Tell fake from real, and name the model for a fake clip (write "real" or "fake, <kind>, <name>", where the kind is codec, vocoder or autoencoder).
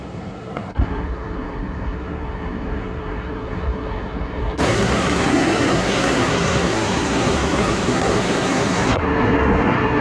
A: fake, codec, SNAC